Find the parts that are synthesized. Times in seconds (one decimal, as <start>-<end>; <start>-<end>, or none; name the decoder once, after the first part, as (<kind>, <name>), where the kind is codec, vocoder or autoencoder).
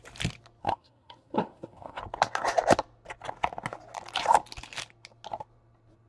0.6-2.0 (codec, SNAC)